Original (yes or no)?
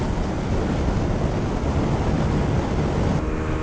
yes